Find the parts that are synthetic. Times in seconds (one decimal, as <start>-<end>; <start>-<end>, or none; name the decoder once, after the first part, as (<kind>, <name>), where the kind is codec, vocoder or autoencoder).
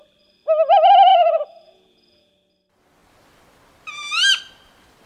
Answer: 1.1-2.3 (vocoder, Vocos)